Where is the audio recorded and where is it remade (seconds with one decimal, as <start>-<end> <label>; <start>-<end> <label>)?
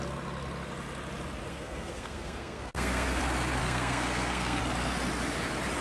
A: 0.0-1.5 recorded; 1.5-3.2 remade; 3.2-3.6 recorded; 3.6-4.6 remade; 4.6-5.8 recorded